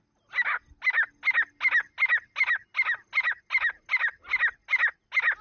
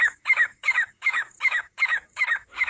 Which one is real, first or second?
first